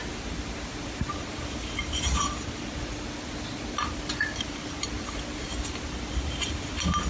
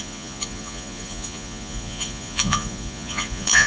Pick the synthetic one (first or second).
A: second